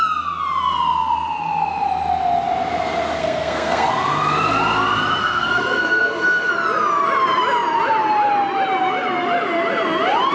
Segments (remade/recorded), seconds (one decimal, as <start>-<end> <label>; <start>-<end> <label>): 0.0-3.2 recorded; 3.2-3.9 remade; 3.9-5.2 recorded; 5.2-6.5 remade; 6.5-10.3 recorded